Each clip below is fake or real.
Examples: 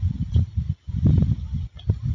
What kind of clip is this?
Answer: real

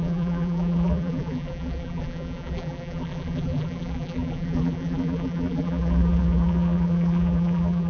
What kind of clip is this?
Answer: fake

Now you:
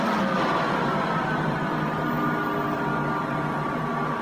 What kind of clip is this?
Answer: real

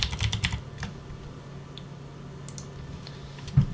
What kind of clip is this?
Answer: real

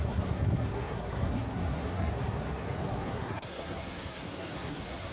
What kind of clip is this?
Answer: fake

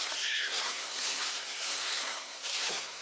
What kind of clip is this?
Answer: fake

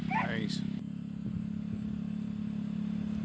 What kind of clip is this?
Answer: real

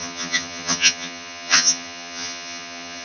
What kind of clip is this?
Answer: fake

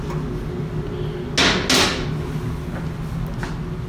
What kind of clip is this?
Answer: real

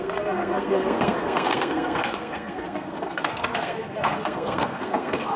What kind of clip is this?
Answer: fake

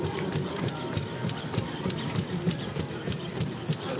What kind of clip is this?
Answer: real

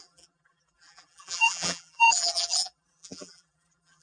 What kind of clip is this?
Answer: fake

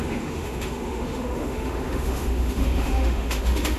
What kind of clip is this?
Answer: fake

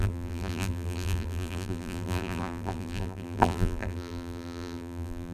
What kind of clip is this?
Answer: fake